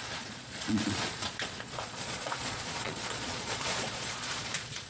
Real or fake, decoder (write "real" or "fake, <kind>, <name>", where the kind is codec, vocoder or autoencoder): fake, vocoder, Vocos